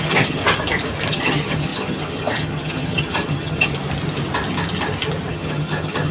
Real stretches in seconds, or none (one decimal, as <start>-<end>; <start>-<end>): 0.4-1.1; 3.7-5.3